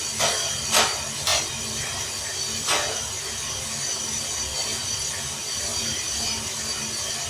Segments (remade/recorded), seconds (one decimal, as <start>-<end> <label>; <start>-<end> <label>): 0.0-5.7 recorded; 5.7-6.4 remade; 6.4-7.3 recorded